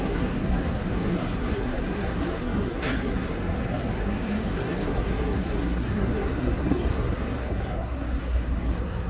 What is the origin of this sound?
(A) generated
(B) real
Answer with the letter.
A